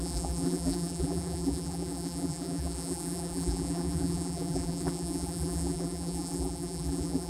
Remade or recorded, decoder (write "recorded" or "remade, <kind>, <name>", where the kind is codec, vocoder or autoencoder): remade, vocoder, BigVGAN v2